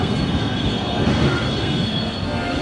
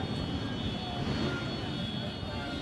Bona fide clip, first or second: second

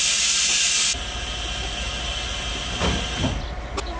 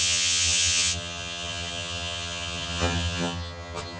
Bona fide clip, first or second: first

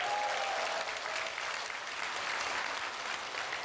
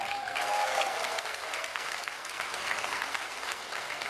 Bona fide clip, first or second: first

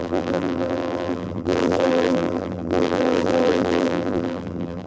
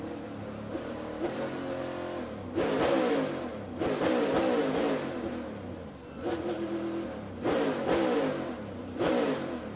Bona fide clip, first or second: second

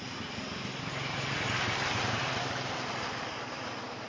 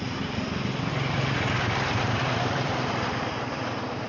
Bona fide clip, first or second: first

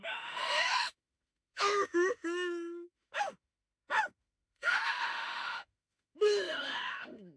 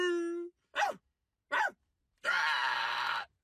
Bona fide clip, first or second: second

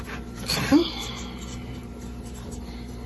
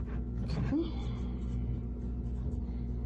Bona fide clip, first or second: second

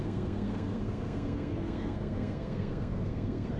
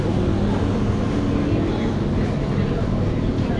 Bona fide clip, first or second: second